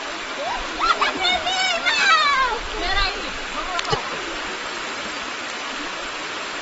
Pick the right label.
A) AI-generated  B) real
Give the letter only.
A